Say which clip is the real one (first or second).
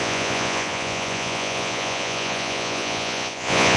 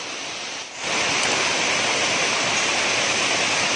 second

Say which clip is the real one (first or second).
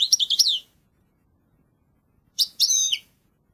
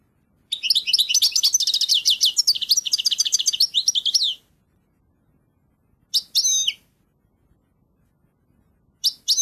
second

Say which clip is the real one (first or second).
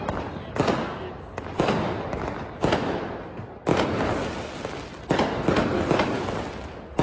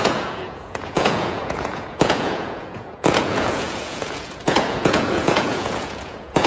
first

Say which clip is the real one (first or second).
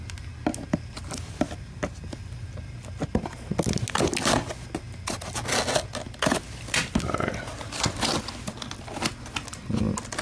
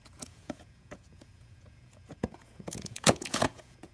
first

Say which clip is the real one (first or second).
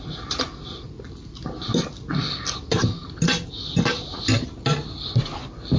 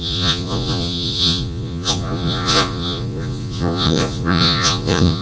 first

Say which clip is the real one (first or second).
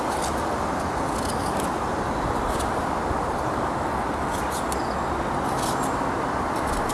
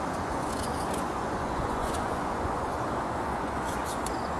first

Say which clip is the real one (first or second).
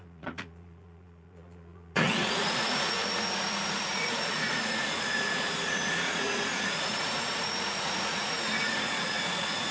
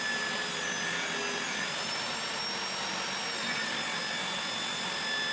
second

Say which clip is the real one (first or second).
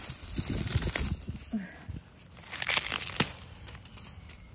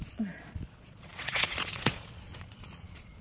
first